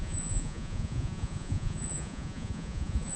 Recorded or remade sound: remade